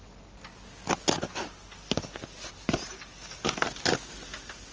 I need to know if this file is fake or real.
real